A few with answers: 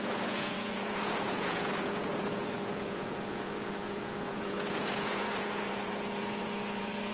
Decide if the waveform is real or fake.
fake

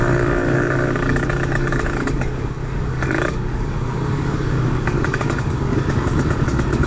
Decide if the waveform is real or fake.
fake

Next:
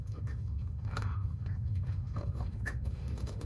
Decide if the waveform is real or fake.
fake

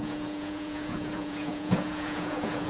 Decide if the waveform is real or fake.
fake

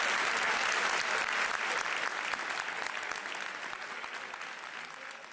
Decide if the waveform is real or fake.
real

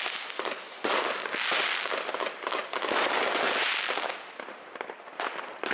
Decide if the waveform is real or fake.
real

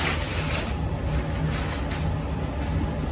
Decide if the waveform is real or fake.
real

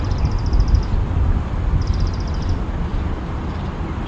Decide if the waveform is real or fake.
real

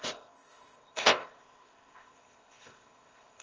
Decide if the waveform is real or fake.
fake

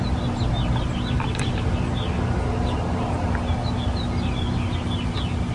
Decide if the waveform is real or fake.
real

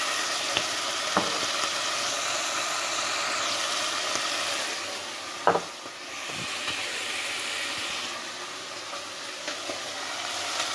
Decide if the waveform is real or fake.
fake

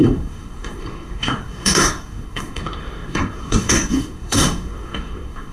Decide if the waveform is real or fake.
fake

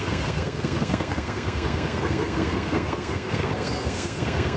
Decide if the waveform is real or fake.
fake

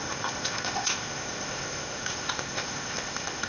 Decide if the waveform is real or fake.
fake